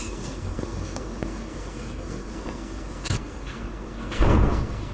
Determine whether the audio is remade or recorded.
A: remade